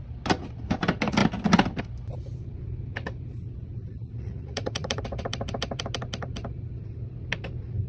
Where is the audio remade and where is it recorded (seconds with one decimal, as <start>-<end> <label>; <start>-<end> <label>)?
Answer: 0.0-3.8 recorded; 3.8-5.0 remade; 5.0-7.9 recorded